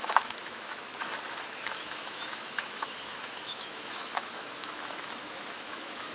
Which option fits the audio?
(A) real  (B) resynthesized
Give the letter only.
B